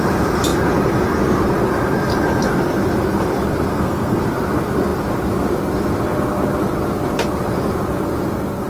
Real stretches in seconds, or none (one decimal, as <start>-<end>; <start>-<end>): 0.0-3.7; 4.2-8.7